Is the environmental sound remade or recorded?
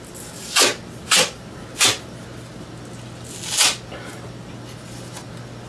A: recorded